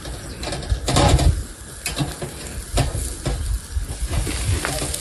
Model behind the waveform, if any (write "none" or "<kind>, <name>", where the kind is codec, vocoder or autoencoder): none